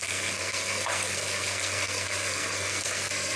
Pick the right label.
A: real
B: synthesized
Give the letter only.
B